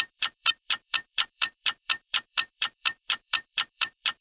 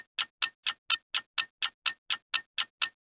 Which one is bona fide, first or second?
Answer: second